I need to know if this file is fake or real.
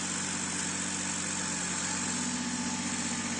real